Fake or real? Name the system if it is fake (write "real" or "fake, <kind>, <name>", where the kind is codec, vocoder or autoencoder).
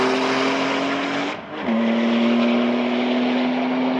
real